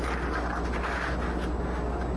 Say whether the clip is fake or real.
real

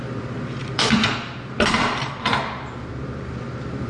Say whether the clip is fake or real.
fake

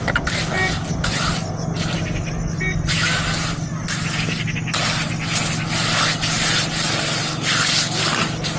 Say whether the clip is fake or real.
real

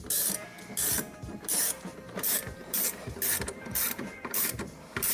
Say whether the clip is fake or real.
fake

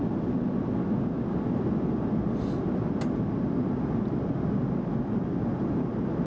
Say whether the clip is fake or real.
real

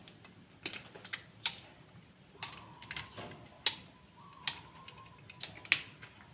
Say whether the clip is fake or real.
real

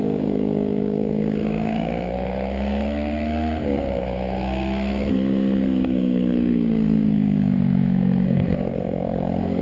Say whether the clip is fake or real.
fake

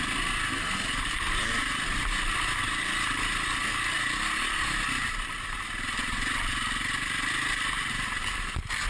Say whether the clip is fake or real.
real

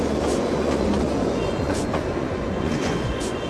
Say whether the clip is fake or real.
fake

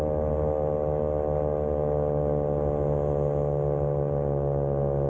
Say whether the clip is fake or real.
real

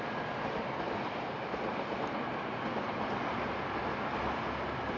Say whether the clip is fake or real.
real